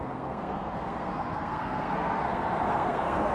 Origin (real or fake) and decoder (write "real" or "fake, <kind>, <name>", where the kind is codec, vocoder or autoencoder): fake, codec, SNAC